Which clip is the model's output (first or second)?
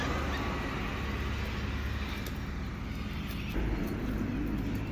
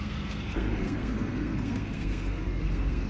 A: second